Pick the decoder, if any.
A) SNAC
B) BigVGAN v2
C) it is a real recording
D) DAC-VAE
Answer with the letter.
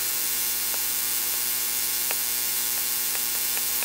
B